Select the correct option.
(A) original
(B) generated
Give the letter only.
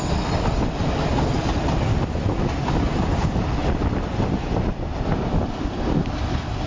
A